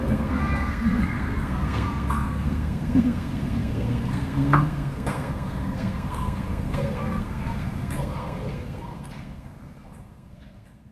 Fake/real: fake